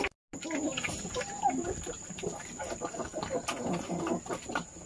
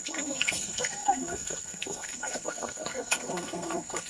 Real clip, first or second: first